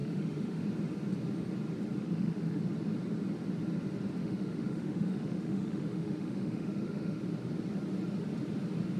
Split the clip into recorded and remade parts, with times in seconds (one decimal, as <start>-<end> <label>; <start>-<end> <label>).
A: 0.0-0.6 remade; 0.6-2.0 recorded; 2.0-2.6 remade; 2.6-4.2 recorded; 4.2-7.2 remade; 7.2-9.0 recorded